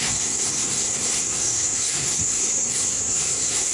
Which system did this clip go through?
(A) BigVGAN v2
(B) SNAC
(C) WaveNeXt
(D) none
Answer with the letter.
B